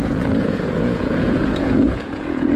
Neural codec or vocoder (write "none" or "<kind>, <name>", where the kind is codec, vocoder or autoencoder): vocoder, Vocos